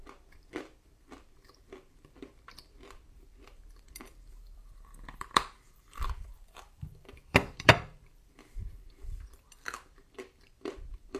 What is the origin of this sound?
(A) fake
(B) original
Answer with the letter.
A